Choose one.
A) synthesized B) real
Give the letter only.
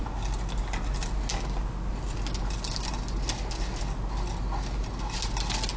B